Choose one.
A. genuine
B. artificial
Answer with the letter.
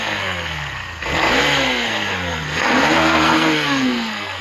B